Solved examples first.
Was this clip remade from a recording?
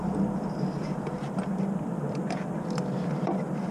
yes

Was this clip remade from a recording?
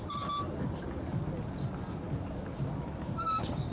no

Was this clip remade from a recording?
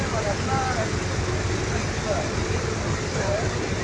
no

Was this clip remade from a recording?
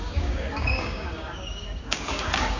yes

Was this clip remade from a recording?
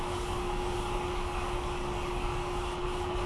yes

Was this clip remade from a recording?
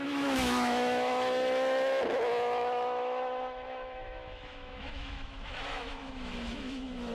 yes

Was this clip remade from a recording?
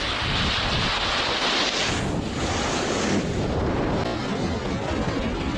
no